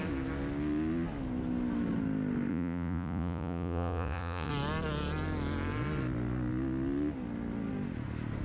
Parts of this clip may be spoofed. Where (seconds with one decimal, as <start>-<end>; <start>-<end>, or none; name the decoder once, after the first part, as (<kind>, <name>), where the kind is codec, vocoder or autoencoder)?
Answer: 2.5-4.5 (vocoder, Vocos)